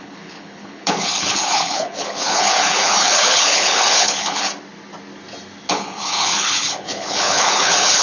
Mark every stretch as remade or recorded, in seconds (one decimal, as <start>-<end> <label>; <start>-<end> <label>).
0.0-4.5 remade; 4.5-5.7 recorded; 5.7-8.0 remade